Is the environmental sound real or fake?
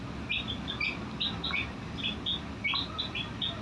real